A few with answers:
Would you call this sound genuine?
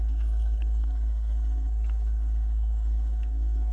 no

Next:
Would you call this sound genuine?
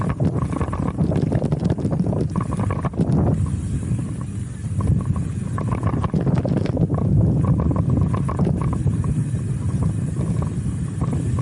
yes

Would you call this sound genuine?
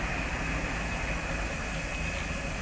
yes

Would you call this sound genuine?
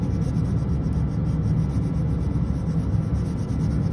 yes